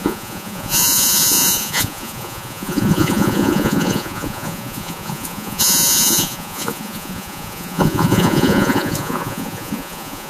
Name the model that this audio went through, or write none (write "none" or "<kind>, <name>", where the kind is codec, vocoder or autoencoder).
vocoder, Vocos